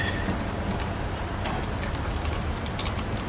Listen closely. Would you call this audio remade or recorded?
remade